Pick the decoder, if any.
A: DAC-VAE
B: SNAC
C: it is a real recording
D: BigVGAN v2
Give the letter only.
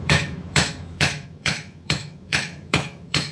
A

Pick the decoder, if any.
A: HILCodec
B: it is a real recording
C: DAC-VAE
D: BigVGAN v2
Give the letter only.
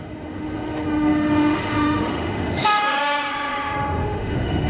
C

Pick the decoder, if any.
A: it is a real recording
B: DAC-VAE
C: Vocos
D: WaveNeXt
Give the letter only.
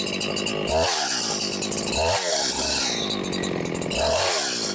A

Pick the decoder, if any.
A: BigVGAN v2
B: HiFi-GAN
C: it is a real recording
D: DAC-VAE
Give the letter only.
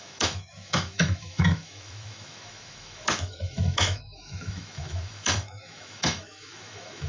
D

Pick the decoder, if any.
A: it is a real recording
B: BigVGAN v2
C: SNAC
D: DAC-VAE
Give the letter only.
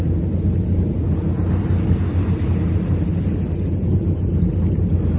A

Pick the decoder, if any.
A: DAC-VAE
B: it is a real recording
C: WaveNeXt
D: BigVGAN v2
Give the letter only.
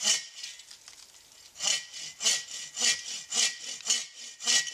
B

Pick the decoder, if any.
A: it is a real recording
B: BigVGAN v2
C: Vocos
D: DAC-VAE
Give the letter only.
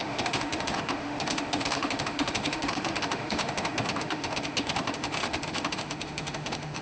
D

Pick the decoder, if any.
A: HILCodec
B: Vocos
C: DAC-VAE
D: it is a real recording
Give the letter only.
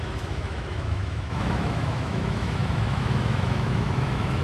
C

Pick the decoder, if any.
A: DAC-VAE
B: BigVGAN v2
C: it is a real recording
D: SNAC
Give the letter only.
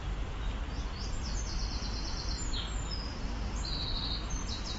C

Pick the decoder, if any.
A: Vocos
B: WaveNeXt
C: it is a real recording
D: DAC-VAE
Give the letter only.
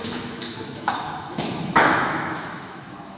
D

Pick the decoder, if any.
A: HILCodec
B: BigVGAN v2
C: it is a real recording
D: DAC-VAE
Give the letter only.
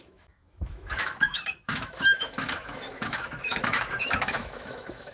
D